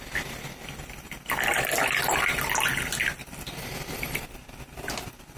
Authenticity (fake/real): fake